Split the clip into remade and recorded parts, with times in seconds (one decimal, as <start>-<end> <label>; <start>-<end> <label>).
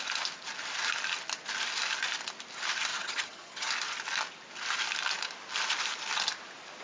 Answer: 0.0-2.9 recorded; 2.9-3.7 remade; 3.7-6.8 recorded